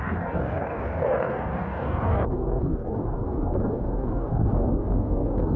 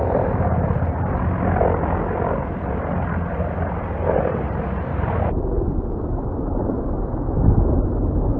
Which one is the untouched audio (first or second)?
second